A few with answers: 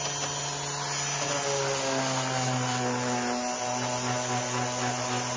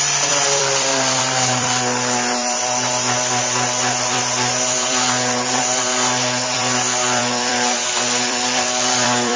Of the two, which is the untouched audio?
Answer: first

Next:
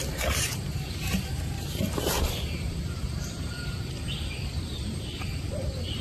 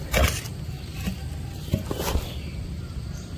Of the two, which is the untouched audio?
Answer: second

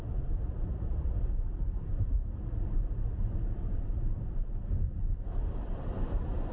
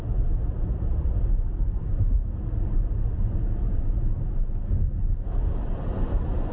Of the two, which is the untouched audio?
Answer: second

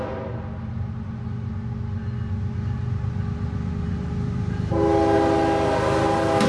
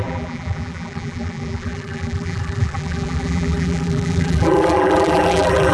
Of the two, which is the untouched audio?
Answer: first